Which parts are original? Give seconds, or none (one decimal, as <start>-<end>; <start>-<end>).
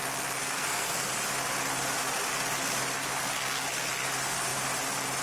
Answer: 0.0-0.4; 1.1-5.2